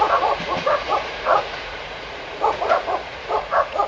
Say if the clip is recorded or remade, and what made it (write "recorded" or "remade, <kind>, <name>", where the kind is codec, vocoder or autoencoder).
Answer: remade, vocoder, Vocos